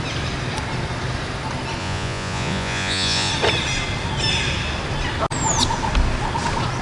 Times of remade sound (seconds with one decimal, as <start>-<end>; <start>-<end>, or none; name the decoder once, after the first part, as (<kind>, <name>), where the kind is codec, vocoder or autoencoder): 1.8-3.3 (vocoder, Vocos)